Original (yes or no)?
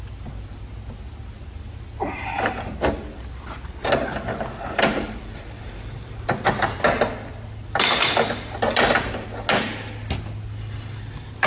yes